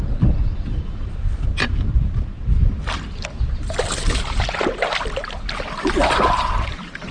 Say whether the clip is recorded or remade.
recorded